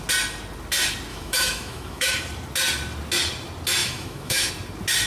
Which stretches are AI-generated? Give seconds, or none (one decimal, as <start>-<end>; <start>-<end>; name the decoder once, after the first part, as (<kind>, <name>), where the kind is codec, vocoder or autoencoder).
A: 1.1-2.1 (autoencoder, DAC-VAE); 3.8-4.5